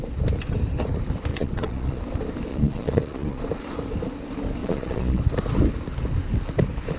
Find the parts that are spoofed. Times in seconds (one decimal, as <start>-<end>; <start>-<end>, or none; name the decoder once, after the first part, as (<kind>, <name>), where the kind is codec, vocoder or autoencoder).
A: 1.3-2.0 (vocoder, Vocos); 2.5-3.4; 4.6-5.2